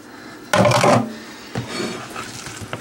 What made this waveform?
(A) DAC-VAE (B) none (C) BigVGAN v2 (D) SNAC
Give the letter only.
B